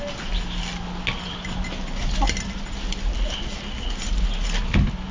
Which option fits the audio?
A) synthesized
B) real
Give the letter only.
B